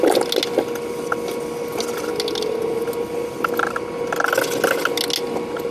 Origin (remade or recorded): recorded